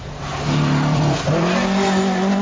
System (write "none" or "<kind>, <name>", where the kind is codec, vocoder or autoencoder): none